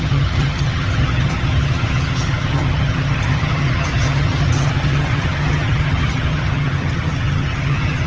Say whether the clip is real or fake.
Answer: fake